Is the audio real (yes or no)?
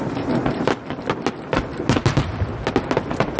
yes